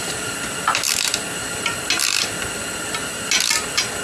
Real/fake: real